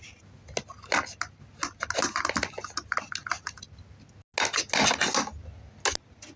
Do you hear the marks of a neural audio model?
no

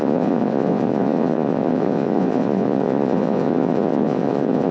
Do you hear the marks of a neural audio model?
yes